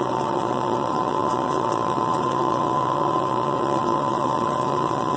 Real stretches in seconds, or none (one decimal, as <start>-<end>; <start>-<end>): none